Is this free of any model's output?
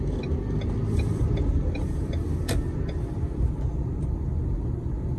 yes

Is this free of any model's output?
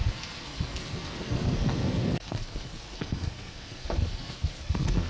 no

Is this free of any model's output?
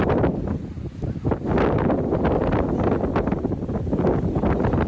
yes